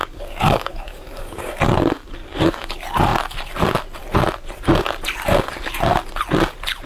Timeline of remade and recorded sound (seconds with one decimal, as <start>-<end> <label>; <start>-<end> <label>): 0.0-1.6 remade; 1.6-2.2 recorded; 2.2-2.7 remade; 2.7-6.9 recorded